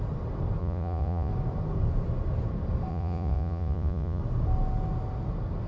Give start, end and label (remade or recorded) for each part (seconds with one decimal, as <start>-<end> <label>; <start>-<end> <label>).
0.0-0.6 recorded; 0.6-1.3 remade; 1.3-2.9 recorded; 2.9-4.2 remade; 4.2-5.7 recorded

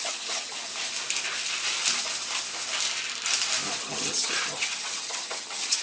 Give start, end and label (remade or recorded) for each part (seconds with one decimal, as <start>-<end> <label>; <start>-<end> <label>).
0.0-0.7 remade; 0.7-3.8 recorded; 3.8-5.8 remade

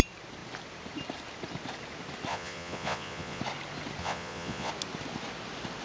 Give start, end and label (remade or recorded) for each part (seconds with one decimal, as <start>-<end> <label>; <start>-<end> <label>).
0.0-2.3 recorded; 2.3-3.4 remade; 3.4-4.0 recorded; 4.0-4.7 remade; 4.7-5.8 recorded